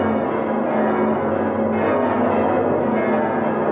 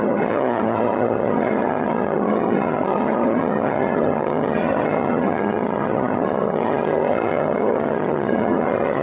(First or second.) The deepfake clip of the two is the second